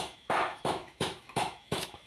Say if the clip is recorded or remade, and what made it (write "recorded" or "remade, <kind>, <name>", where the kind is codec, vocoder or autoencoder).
remade, autoencoder, DAC-VAE